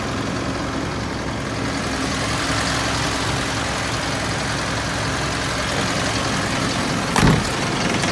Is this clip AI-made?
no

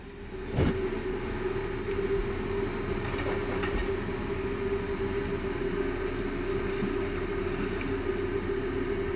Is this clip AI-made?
no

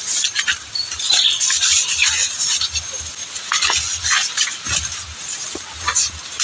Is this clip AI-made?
no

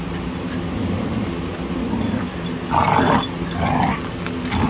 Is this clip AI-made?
no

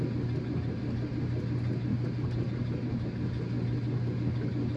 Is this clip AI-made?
no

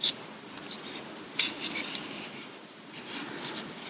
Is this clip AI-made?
no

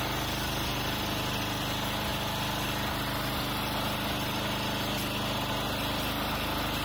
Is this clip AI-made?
no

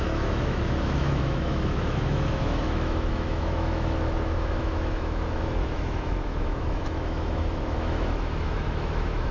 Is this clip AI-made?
yes